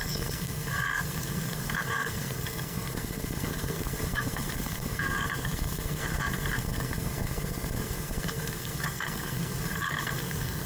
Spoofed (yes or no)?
yes